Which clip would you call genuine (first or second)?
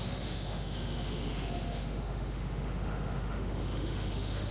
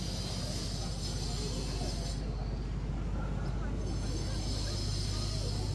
second